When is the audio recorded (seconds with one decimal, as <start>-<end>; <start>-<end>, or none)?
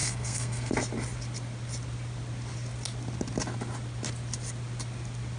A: 0.7-5.4